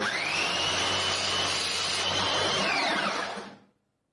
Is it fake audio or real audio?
real